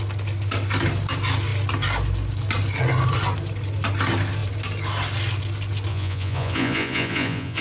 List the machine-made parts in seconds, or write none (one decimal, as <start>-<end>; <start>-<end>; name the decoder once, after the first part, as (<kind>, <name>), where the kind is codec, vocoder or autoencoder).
5.9-7.6 (vocoder, Vocos)